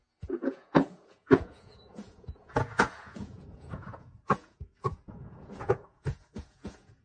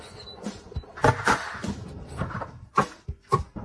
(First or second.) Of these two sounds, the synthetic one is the first